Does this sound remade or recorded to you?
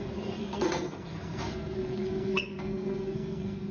remade